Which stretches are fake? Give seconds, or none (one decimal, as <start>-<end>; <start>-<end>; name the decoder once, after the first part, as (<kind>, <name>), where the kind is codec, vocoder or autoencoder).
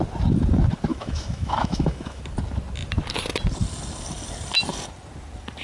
0.9-2.2 (autoencoder, DAC-VAE)